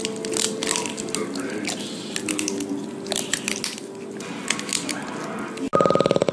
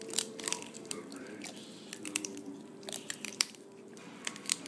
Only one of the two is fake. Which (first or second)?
second